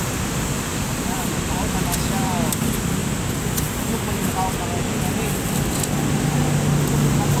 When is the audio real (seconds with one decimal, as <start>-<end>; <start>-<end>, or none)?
3.0-7.4